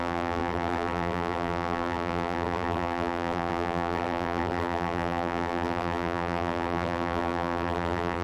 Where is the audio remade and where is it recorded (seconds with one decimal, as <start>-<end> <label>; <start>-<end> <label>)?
0.0-8.2 remade